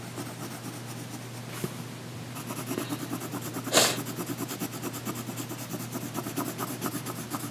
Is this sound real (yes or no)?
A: yes